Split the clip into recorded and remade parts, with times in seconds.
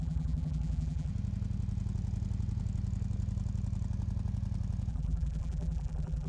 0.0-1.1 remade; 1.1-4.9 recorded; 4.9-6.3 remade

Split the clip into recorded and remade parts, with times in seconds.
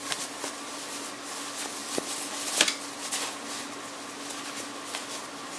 0.0-5.6 recorded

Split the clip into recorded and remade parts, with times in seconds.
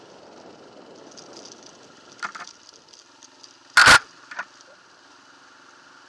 0.0-6.1 recorded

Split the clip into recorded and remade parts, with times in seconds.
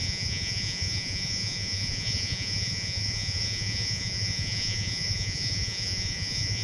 0.0-6.6 remade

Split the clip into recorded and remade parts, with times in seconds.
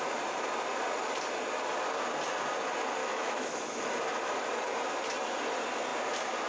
0.0-3.0 recorded; 3.0-3.9 remade; 3.9-6.5 recorded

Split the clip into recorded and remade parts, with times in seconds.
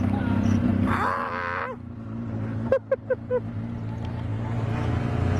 0.0-5.4 recorded